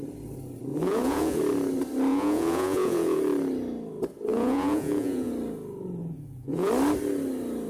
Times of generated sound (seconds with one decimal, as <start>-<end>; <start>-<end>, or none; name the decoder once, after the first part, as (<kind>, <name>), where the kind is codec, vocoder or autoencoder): 0.7-1.4 (vocoder, Vocos); 2.1-3.2; 4.3-5.3; 6.0-6.7